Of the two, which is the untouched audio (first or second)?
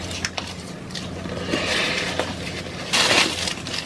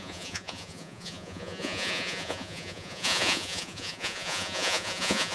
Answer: first